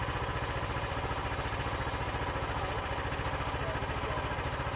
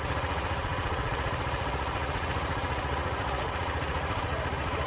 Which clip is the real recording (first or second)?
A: first